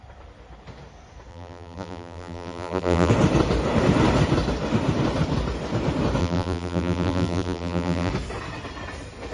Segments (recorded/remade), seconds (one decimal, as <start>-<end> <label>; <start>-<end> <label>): 0.0-1.3 recorded; 1.3-3.1 remade; 3.1-6.2 recorded; 6.2-8.1 remade; 8.1-9.3 recorded

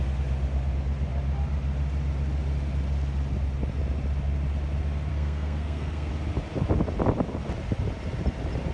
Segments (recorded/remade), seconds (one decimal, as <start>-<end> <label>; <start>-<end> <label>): 0.0-5.1 recorded; 5.1-6.1 remade; 6.1-8.7 recorded

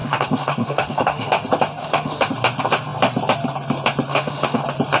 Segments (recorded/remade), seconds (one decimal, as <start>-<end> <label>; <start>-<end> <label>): 0.0-1.3 remade; 1.3-1.8 recorded; 1.8-2.3 remade; 2.3-4.1 recorded; 4.1-4.6 remade; 4.6-5.0 recorded

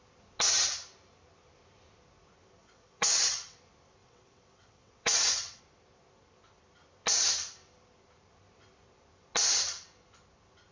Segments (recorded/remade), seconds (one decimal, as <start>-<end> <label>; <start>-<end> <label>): 0.0-2.6 recorded; 2.6-3.6 remade; 3.6-4.0 recorded; 4.0-5.6 remade; 5.6-10.7 recorded

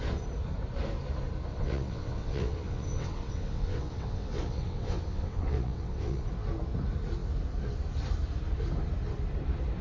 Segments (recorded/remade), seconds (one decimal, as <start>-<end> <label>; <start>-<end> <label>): 0.0-1.5 recorded; 1.5-6.3 remade; 6.3-9.8 recorded

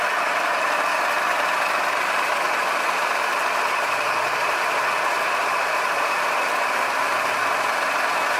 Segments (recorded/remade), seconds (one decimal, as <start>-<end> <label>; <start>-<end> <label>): 0.0-8.4 recorded